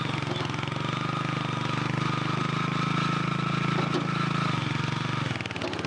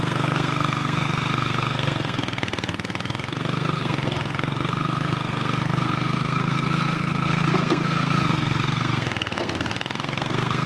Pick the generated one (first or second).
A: second